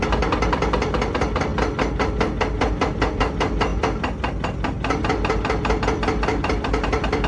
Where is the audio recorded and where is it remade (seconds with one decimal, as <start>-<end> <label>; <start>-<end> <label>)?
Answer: 0.0-6.3 recorded; 6.3-6.8 remade; 6.8-7.3 recorded